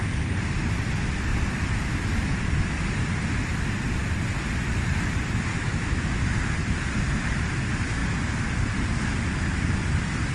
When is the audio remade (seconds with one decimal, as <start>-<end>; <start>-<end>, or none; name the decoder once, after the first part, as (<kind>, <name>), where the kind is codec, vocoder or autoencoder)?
5.5-6.2 (autoencoder, DAC-VAE)